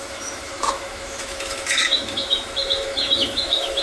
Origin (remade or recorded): remade